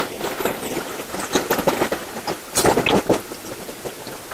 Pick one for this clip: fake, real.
real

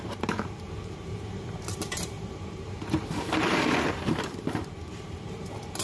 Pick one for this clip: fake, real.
fake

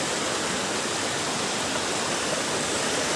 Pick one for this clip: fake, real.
real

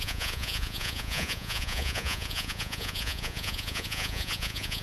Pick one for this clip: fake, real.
fake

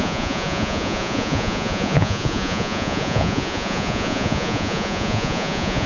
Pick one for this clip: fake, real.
fake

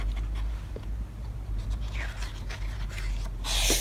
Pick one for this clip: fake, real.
real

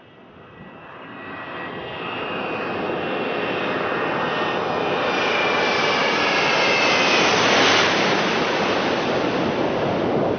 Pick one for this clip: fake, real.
real